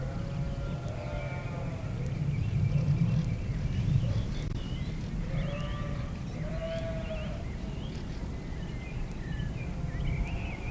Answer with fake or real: real